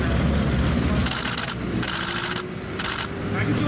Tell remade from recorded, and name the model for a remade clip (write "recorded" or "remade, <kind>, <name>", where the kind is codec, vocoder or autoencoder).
recorded